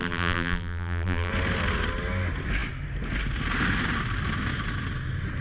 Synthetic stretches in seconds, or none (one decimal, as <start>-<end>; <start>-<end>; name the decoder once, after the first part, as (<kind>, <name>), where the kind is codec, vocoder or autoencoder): 0.0-1.3 (vocoder, BigVGAN v2)